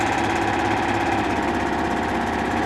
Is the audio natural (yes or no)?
yes